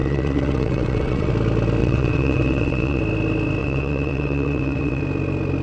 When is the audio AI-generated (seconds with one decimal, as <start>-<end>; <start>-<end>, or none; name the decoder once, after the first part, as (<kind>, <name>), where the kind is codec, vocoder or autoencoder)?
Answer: 0.0-1.3 (vocoder, WaveNeXt); 1.8-3.0; 3.6-5.0